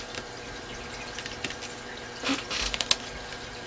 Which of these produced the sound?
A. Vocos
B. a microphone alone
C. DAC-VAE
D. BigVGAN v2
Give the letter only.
B